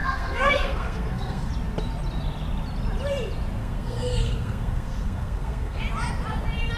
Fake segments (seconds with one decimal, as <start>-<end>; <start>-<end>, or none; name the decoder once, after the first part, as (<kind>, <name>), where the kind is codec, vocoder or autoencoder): 0.0-1.5 (codec, SNAC); 3.6-5.8